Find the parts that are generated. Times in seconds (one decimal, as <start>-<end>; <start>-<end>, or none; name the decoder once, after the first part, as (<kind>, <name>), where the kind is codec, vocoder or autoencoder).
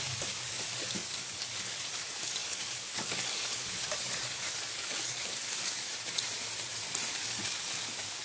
0.0-5.9 (codec, DAC); 7.1-8.2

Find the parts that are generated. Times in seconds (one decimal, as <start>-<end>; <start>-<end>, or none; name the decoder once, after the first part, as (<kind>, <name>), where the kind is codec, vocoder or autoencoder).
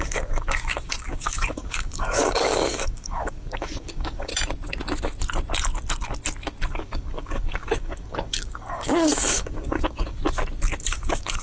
0.0-4.3 (codec, DAC); 6.7-10.2; 10.8-11.4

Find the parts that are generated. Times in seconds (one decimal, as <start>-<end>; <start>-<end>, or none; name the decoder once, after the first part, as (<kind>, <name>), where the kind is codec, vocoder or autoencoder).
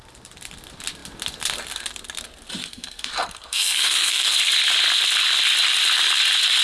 2.6-4.3 (codec, SNAC)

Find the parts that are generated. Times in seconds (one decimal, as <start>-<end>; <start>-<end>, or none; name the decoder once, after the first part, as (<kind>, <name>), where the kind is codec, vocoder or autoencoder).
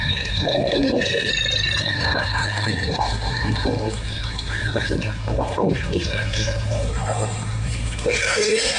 0.0-1.3 (codec, SNAC); 1.8-8.8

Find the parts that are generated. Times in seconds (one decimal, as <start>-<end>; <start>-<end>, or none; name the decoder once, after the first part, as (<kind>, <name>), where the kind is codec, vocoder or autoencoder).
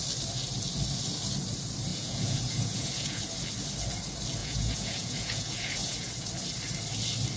1.9-3.2 (vocoder, Vocos); 4.4-6.3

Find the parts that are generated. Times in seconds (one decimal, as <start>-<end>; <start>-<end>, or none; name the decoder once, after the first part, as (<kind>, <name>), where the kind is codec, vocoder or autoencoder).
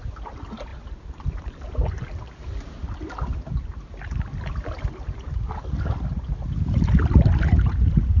none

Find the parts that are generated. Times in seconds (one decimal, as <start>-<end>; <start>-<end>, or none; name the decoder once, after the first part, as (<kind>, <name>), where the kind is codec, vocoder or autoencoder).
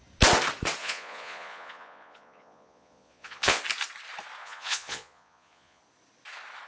0.8-3.6 (vocoder, Vocos); 4.4-5.8